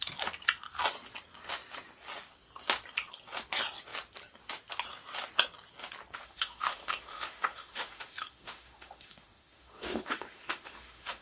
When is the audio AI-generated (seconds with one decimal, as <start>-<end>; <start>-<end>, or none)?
6.2-11.2

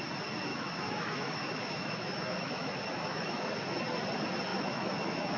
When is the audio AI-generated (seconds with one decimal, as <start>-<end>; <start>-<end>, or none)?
0.5-3.5; 4.5-5.4

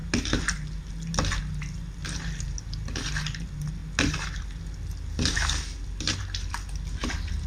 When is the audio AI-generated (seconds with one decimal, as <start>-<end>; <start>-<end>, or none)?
none